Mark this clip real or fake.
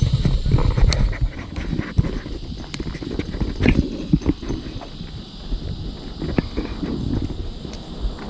real